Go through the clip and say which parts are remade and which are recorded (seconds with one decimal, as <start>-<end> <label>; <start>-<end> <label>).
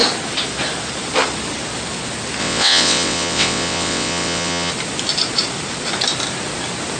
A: 0.0-2.4 recorded; 2.4-4.7 remade; 4.7-7.0 recorded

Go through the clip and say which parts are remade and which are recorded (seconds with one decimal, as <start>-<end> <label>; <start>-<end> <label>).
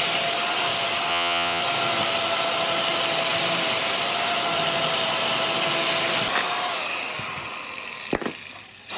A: 0.0-1.1 recorded; 1.1-1.6 remade; 1.6-9.0 recorded